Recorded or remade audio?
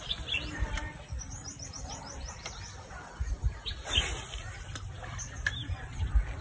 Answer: remade